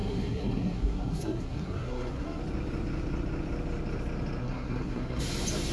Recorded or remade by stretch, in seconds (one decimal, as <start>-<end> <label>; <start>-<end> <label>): 0.0-2.4 remade; 2.4-4.4 recorded; 4.4-5.2 remade; 5.2-5.7 recorded